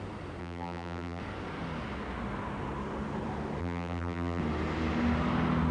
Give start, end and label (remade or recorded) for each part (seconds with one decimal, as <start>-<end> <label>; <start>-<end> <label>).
0.0-0.4 recorded; 0.4-1.2 remade; 1.2-3.6 recorded; 3.6-4.4 remade; 4.4-5.7 recorded